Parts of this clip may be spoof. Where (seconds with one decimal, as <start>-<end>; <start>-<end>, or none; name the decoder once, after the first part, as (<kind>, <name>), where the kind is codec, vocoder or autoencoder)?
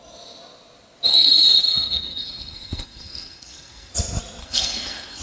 1.1-3.9 (codec, SNAC); 4.4-5.2